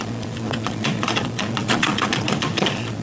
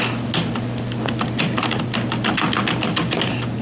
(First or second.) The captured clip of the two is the second